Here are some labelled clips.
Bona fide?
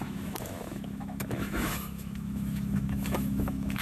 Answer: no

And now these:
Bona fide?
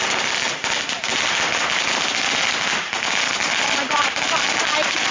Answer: yes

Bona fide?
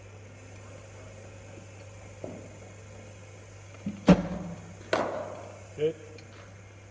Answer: yes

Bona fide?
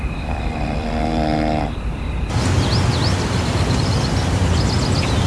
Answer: yes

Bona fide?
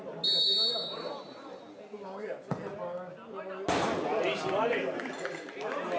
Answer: yes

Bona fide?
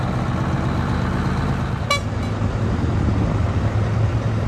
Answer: yes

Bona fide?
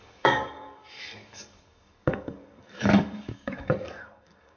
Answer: no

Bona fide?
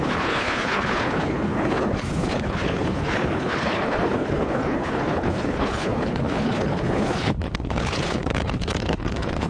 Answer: no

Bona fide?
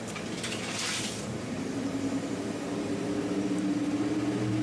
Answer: no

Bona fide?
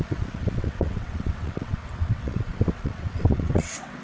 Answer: no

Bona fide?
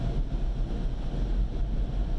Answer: yes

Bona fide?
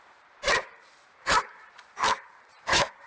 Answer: no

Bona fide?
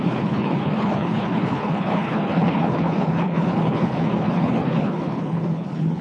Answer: no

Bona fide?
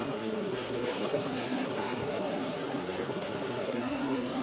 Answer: no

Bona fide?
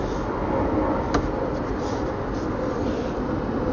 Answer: yes